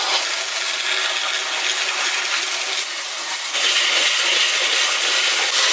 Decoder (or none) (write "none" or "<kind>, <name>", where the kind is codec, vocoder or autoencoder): none